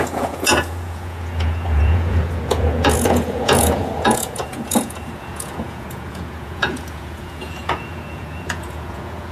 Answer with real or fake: fake